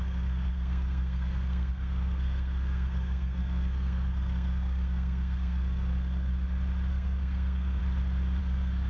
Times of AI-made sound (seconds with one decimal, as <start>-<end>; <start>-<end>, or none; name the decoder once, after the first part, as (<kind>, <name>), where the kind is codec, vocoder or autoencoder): 0.0-6.3 (codec, SNAC); 6.9-7.8; 8.4-8.9